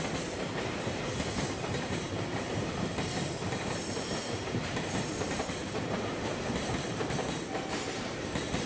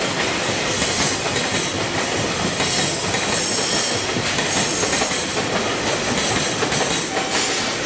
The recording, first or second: second